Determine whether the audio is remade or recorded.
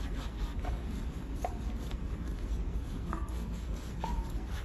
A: remade